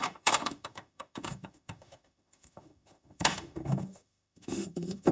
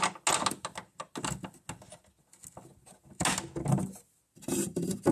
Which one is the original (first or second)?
second